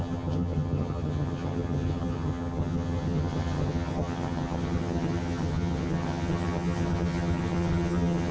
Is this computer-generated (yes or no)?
yes